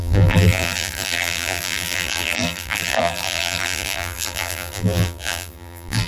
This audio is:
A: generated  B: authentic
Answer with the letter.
A